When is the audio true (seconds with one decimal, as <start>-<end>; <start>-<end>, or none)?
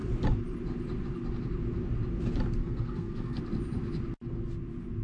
0.0-2.6; 3.4-5.0